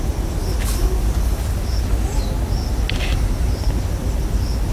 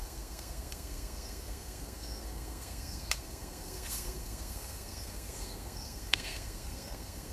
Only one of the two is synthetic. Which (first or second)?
second